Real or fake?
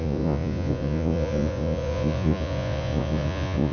fake